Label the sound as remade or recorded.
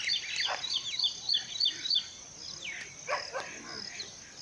recorded